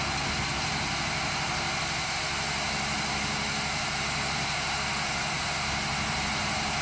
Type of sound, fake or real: real